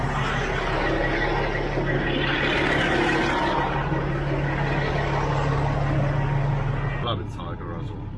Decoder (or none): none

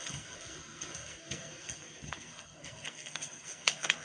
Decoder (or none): codec, SNAC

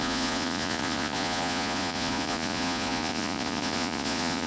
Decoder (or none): vocoder, Vocos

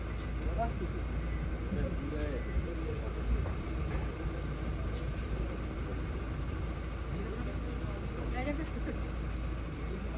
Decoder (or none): none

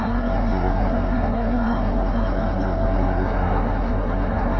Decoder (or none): codec, SNAC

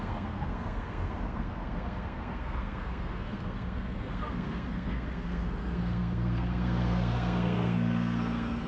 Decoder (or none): codec, SNAC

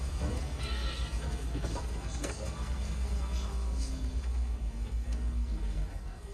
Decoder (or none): codec, SNAC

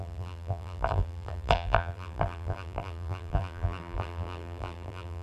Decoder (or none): vocoder, BigVGAN v2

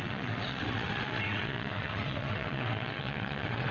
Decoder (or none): vocoder, WaveNeXt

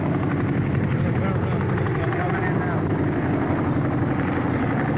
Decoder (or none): none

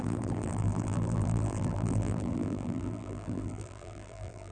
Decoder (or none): vocoder, BigVGAN v2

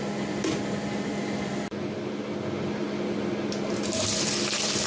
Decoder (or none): none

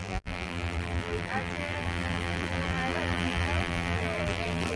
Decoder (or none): vocoder, BigVGAN v2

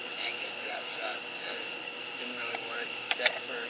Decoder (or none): codec, DAC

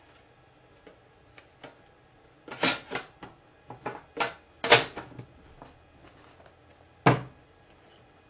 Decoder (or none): none